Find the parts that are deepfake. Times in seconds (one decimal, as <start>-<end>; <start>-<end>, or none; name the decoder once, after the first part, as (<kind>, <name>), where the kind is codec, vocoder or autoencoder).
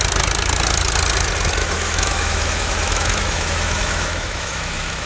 1.6-5.1 (autoencoder, DAC-VAE)